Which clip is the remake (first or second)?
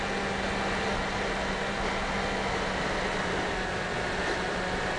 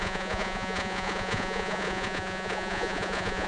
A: second